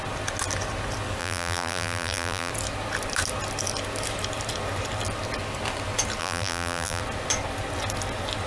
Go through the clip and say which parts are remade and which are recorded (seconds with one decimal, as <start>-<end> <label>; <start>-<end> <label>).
0.0-1.2 recorded; 1.2-2.5 remade; 2.5-6.2 recorded; 6.2-7.0 remade; 7.0-8.5 recorded